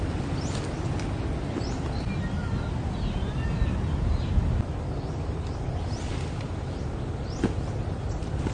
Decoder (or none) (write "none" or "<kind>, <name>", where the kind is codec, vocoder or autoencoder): none